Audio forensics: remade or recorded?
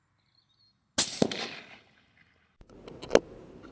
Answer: recorded